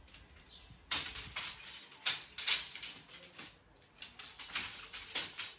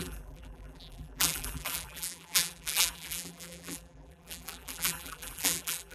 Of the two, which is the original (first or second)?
first